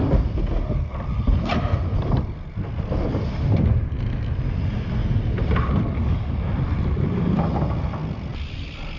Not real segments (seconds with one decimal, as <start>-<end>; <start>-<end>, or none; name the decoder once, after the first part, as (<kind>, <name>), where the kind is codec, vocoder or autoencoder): none